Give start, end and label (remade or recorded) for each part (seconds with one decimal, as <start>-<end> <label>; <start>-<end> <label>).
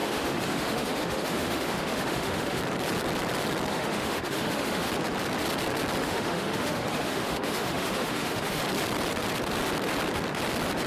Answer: 0.0-2.6 remade; 2.6-3.7 recorded; 3.7-4.9 remade; 4.9-6.0 recorded; 6.0-8.6 remade; 8.6-10.9 recorded